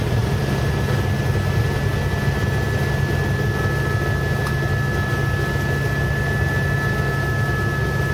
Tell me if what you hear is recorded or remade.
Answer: recorded